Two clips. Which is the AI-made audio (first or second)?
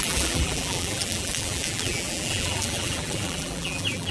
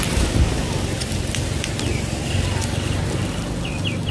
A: first